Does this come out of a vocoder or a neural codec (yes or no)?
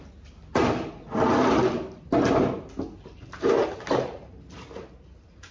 no